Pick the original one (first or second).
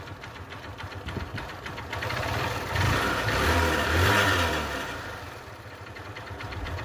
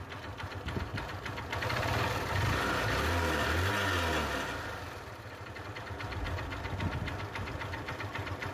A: second